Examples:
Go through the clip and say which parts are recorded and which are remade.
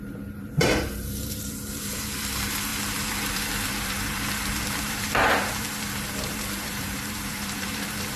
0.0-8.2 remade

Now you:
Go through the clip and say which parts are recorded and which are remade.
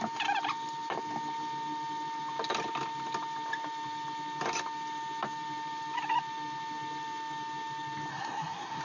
0.0-8.1 recorded; 8.1-8.8 remade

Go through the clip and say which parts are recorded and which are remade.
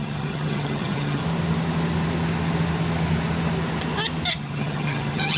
0.0-1.2 remade; 1.2-4.3 recorded; 4.3-5.4 remade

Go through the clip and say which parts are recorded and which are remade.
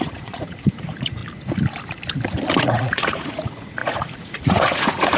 0.0-1.2 remade; 1.2-2.6 recorded; 2.6-5.2 remade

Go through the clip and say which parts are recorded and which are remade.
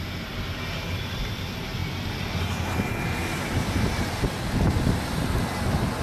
0.0-3.2 recorded; 3.2-4.4 remade; 4.4-6.0 recorded